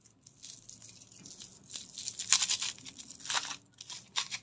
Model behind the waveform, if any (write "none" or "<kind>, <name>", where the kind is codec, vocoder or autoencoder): none